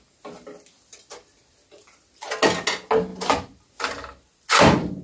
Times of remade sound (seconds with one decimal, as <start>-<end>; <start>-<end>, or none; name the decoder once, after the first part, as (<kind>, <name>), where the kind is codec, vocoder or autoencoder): none